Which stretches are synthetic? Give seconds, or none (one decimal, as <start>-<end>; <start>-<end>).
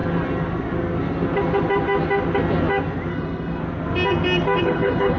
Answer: 3.1-3.6; 4.6-5.2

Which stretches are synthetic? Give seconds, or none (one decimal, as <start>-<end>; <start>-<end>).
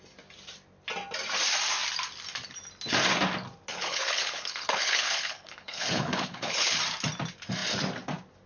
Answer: 3.7-6.8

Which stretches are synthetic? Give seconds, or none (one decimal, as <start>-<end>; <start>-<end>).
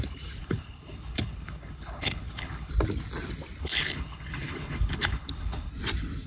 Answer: 0.4-2.7; 3.6-5.7